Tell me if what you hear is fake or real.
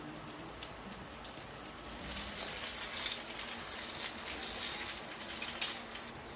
real